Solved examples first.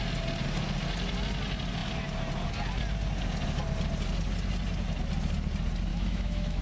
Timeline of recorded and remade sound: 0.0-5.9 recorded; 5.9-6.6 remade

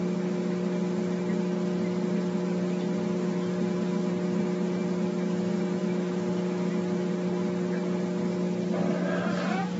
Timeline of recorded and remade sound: 0.0-5.8 recorded; 5.8-6.7 remade; 6.7-9.8 recorded

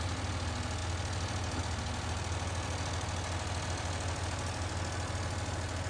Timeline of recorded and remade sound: 0.0-5.9 recorded

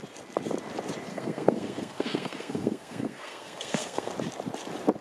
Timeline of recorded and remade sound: 0.0-1.1 recorded; 1.1-4.1 remade; 4.1-5.0 recorded